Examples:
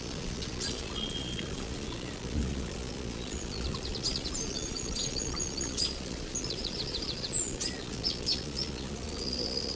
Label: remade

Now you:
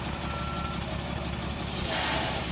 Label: recorded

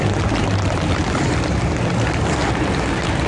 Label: recorded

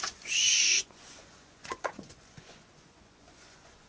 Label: remade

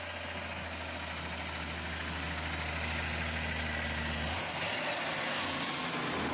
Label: recorded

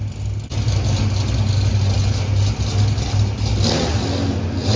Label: recorded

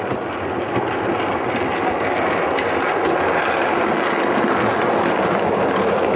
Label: recorded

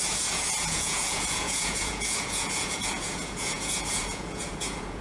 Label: remade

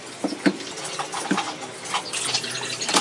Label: recorded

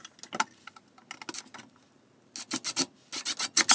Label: recorded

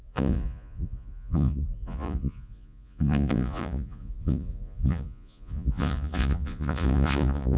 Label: remade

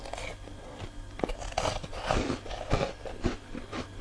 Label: recorded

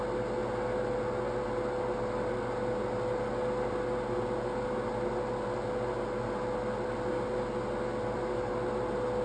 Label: recorded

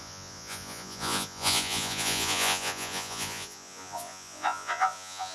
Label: remade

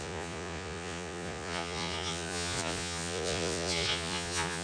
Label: remade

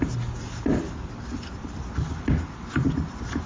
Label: recorded